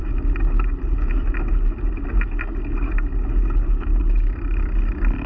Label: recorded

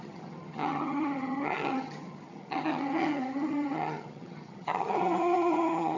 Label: remade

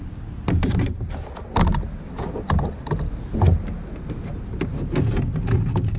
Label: recorded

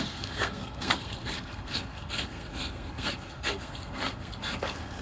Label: remade